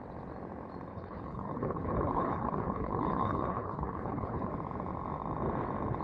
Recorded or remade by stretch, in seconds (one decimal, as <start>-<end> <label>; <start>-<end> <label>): 0.0-0.9 recorded; 0.9-4.5 remade; 4.5-6.0 recorded